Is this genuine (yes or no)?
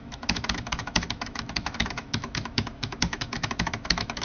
no